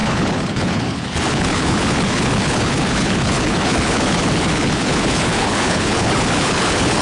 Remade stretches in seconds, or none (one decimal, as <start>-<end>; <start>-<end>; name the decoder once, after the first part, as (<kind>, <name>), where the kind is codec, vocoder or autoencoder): 0.0-7.0 (codec, HILCodec)